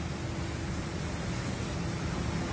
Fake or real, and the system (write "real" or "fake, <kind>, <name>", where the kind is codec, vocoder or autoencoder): real